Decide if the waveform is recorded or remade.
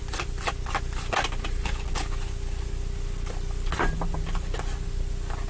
recorded